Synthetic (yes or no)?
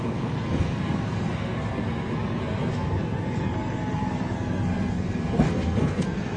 yes